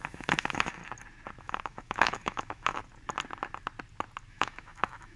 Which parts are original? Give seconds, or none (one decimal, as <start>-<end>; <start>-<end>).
0.8-1.4; 2.8-4.3

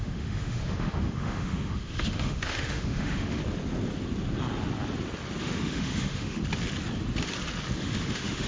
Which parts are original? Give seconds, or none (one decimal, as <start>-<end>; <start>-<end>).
3.4-5.4; 6.4-7.8

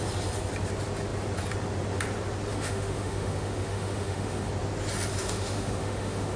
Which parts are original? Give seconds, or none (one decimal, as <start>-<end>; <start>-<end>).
0.0-2.5; 4.5-5.1

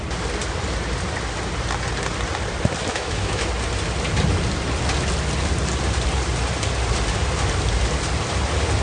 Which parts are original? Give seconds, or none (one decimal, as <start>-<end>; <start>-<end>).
0.0-2.9; 3.5-8.8